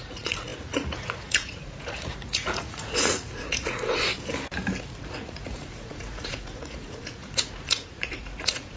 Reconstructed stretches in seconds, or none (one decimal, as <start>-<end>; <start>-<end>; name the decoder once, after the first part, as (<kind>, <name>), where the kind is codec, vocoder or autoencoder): 0.0-4.1 (vocoder, Vocos); 5.1-8.8